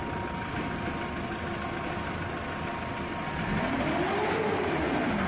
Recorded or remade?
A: recorded